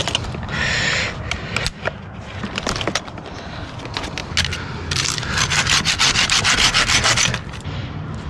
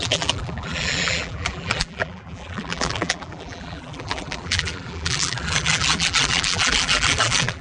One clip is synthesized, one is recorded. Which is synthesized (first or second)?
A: second